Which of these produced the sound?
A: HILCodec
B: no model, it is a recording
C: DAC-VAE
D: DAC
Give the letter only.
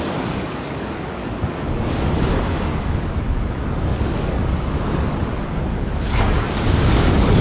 D